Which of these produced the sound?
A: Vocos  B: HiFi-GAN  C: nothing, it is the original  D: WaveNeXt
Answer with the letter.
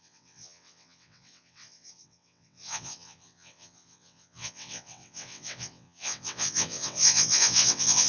D